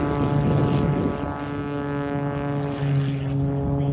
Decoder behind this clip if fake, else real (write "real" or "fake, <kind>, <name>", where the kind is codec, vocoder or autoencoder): real